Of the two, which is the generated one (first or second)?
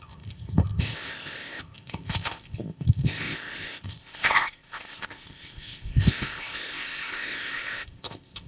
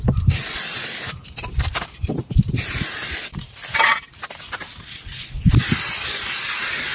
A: first